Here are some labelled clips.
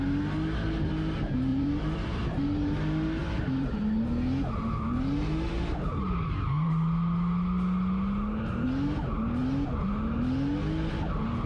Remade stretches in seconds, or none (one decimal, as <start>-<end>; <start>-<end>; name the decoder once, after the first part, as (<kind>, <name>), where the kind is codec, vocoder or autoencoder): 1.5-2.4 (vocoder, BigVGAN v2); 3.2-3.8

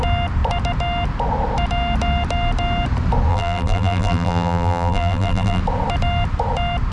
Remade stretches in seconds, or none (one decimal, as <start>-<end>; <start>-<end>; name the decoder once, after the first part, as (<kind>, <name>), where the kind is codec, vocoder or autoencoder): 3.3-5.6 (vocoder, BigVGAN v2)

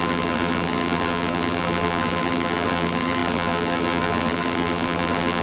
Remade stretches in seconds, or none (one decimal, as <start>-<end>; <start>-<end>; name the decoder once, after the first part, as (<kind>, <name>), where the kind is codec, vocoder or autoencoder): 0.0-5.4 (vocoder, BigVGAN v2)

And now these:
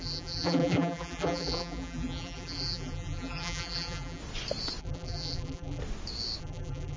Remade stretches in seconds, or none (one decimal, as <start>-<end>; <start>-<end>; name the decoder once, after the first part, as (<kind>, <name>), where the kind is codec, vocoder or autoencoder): 0.0-4.2 (vocoder, BigVGAN v2); 4.8-5.8; 6.4-7.0